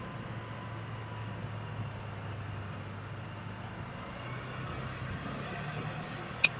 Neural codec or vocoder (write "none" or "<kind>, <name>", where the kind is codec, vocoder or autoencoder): none